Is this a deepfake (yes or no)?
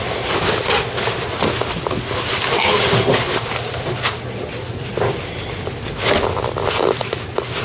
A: no